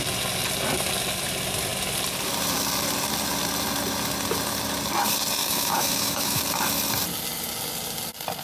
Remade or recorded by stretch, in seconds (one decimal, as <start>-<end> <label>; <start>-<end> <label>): 0.0-5.4 recorded; 5.4-6.4 remade; 6.4-8.4 recorded